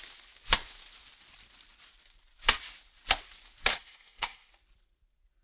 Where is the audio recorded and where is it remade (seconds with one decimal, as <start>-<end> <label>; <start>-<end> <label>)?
0.0-3.7 recorded; 3.7-4.5 remade; 4.5-5.4 recorded